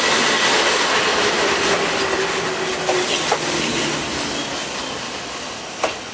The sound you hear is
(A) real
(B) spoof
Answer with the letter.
A